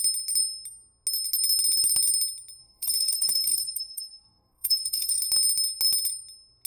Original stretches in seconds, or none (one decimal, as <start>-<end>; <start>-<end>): 0.0-2.6; 5.2-6.7